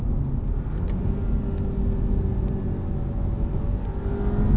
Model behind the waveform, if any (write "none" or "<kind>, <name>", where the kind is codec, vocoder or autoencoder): none